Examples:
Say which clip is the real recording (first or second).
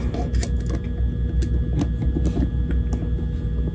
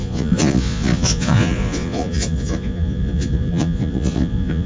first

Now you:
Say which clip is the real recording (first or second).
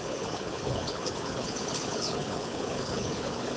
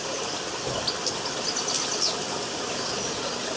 second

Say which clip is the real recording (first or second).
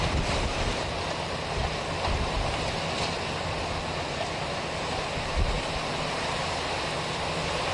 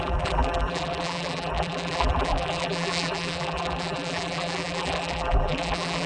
first